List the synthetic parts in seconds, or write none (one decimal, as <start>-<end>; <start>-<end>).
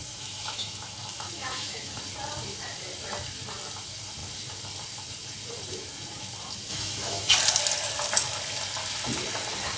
0.0-2.0; 6.7-7.3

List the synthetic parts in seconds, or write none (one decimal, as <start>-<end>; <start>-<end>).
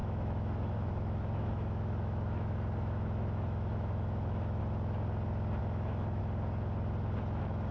0.0-4.6; 5.6-6.2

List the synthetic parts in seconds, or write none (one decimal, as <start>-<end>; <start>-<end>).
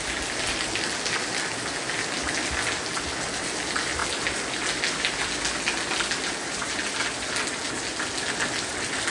none